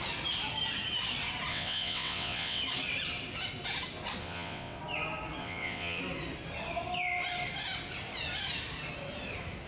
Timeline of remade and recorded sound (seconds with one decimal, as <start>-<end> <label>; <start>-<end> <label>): 0.0-1.5 recorded; 1.5-2.6 remade; 2.6-4.2 recorded; 4.2-4.8 remade; 4.8-5.4 recorded; 5.4-6.0 remade; 6.0-9.7 recorded

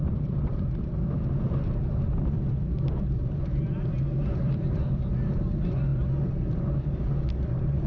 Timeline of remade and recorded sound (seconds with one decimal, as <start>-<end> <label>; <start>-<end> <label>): 0.0-7.9 remade

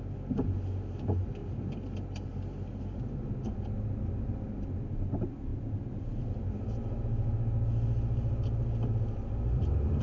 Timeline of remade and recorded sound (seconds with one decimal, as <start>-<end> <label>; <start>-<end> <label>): 0.0-10.0 recorded

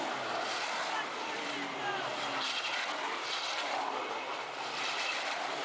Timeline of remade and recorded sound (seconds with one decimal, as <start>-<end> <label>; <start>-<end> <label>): 0.0-2.1 remade; 2.1-3.6 recorded; 3.6-5.6 remade

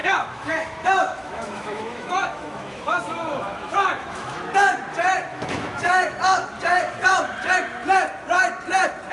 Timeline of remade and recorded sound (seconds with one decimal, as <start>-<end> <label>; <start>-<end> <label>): 0.0-4.4 remade; 4.4-5.3 recorded; 5.3-6.2 remade; 6.2-9.1 recorded

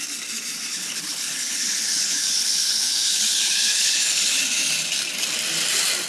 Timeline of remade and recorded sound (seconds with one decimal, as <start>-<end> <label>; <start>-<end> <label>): 0.0-0.7 recorded; 0.7-4.4 remade; 4.4-6.1 recorded